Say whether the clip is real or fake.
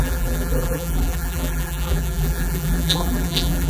fake